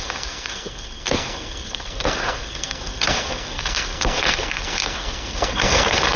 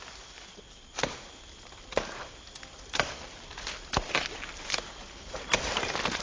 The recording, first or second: second